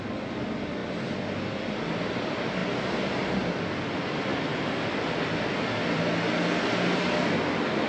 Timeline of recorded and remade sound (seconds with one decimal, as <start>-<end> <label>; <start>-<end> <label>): 0.0-4.3 recorded; 4.3-6.0 remade; 6.0-7.9 recorded